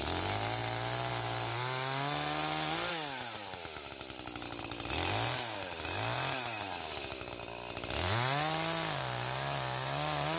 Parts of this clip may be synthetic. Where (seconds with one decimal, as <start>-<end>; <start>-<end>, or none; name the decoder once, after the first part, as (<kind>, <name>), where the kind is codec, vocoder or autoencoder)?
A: none